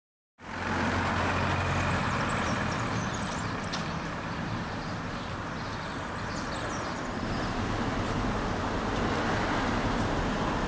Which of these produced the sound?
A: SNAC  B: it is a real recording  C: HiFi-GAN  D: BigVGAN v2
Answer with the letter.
B